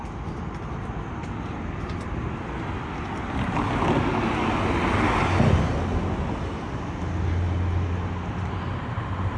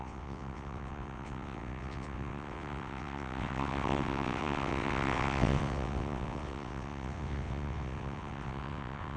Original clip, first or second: first